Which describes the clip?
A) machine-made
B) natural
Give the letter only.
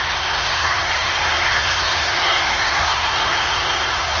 A